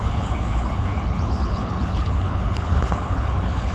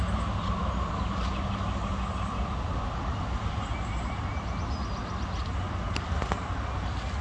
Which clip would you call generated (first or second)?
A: first